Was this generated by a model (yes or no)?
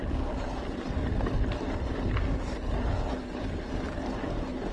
no